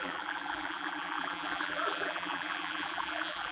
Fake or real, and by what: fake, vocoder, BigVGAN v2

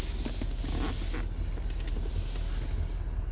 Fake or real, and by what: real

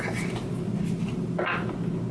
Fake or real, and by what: real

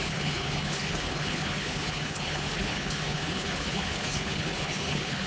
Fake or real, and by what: fake, codec, HILCodec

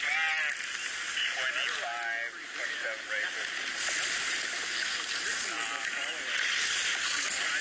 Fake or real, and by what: real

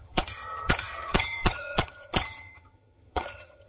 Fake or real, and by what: fake, vocoder, HiFi-GAN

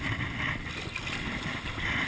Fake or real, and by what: real